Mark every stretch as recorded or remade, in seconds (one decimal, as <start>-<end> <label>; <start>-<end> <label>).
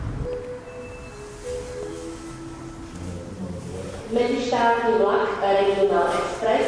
0.0-1.9 recorded; 1.9-2.6 remade; 2.6-6.7 recorded